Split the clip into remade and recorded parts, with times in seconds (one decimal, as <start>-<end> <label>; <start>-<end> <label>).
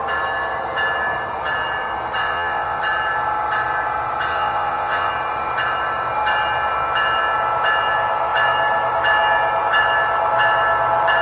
0.0-2.2 recorded; 2.2-2.8 remade; 2.8-4.3 recorded; 4.3-5.1 remade; 5.1-11.2 recorded